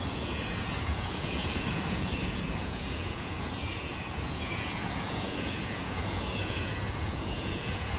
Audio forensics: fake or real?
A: fake